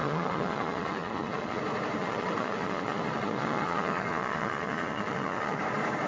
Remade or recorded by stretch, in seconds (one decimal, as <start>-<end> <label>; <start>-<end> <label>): 0.0-1.6 remade; 1.6-2.0 recorded; 2.0-5.6 remade; 5.6-6.1 recorded